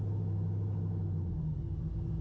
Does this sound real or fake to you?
real